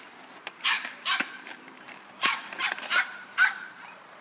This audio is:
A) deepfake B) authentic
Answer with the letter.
A